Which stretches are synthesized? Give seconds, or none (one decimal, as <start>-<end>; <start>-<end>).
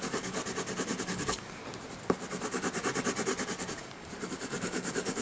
0.0-0.4; 1.0-1.6; 3.6-5.2